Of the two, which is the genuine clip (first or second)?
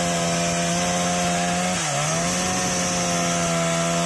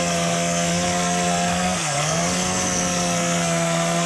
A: first